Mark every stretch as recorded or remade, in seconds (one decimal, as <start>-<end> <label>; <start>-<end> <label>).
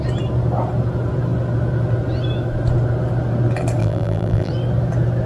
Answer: 0.0-3.8 recorded; 3.8-4.5 remade; 4.5-5.3 recorded